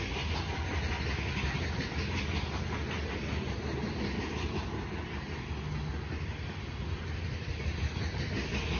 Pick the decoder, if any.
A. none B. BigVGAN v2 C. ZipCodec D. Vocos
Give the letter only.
A